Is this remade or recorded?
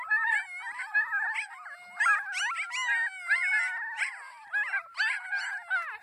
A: recorded